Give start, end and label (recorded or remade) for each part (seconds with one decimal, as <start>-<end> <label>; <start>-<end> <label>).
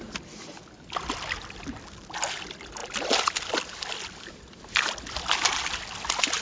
0.0-6.4 recorded